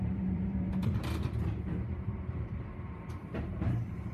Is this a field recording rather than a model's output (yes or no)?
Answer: no